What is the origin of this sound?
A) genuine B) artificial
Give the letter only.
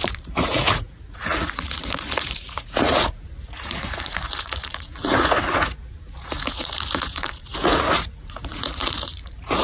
B